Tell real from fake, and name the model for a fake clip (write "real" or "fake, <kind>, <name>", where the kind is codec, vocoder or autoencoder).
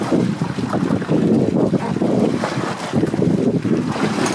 real